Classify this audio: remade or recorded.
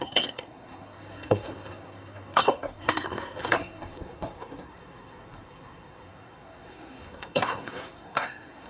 remade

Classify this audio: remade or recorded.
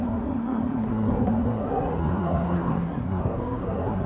remade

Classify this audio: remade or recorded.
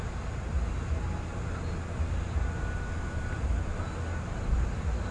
recorded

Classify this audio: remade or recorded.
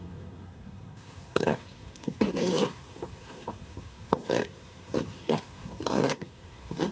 remade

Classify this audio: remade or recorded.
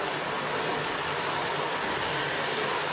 recorded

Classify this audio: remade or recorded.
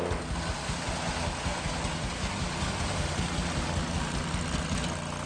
recorded